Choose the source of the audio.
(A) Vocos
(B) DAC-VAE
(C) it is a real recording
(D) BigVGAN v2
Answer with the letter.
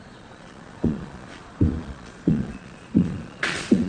A